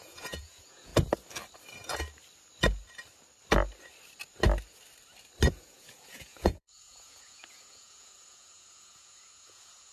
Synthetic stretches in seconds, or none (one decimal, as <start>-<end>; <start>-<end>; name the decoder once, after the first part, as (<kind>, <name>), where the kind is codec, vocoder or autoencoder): 0.0-0.9 (vocoder, Vocos); 5.6-9.9